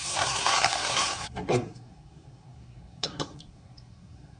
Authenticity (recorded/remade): remade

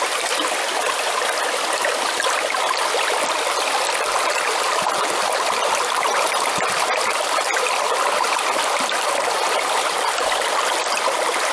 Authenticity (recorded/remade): remade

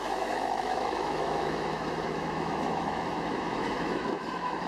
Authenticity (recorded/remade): remade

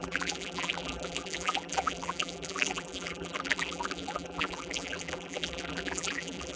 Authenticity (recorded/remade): remade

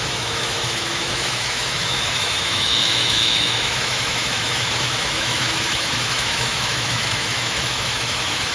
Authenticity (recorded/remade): remade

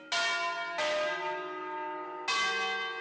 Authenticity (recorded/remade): recorded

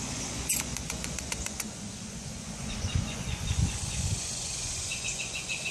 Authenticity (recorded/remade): remade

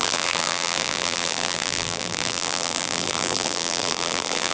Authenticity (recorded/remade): remade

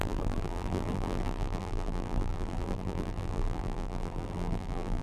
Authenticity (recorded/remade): remade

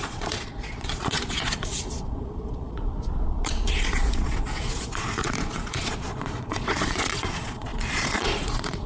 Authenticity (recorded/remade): remade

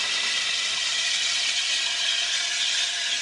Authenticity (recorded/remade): recorded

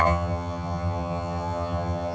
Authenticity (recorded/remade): remade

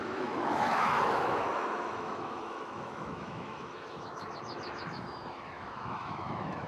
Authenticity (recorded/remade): remade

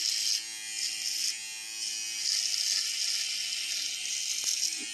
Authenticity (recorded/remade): recorded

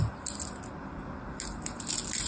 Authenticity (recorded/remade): recorded